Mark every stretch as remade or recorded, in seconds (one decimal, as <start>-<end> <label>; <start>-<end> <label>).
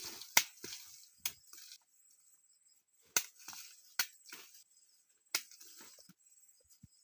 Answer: 0.0-7.0 recorded